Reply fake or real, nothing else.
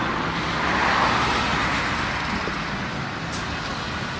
real